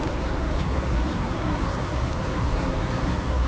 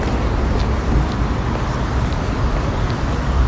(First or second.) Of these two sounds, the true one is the second